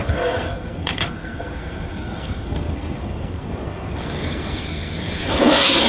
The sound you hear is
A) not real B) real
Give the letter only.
A